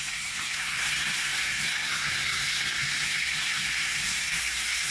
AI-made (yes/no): yes